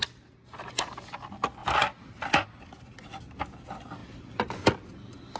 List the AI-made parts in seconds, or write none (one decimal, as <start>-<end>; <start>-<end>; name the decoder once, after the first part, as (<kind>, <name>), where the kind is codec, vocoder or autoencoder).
4.0-4.6 (vocoder, BigVGAN v2)